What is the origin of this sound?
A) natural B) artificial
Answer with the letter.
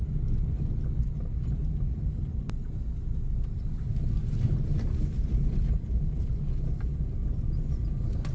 A